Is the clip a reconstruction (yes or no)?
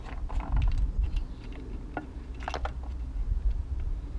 no